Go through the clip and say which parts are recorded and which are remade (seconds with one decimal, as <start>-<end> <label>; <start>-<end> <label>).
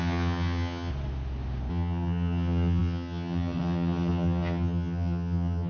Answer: 0.0-0.9 remade; 0.9-1.7 recorded; 1.7-5.7 remade